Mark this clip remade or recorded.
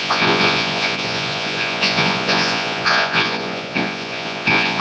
remade